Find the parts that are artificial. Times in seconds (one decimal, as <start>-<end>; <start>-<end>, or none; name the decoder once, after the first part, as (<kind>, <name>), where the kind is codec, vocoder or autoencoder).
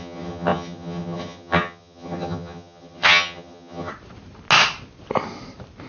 0.0-3.9 (vocoder, HiFi-GAN)